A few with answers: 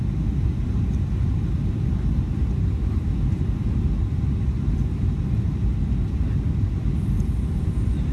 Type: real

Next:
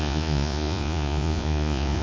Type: fake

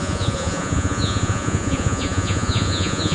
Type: fake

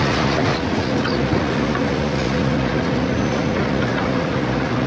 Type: fake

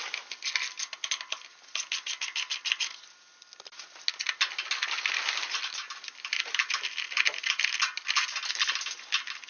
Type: real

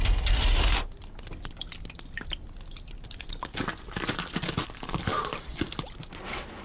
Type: real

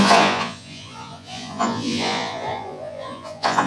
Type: fake